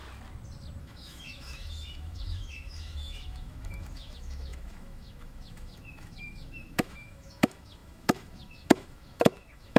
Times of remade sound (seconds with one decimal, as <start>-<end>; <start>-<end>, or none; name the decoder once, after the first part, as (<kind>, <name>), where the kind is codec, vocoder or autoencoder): 0.8-9.8 (autoencoder, DAC-VAE)